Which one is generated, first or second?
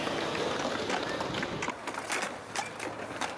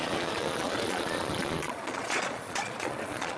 second